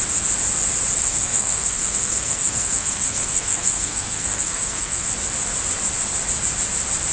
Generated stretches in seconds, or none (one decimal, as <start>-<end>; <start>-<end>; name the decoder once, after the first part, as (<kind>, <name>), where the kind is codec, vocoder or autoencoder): 1.0-5.1 (codec, SNAC)